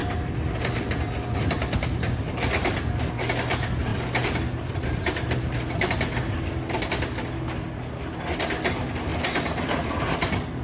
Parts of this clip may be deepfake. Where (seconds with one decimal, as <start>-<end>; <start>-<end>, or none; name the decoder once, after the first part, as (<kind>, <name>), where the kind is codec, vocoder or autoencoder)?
none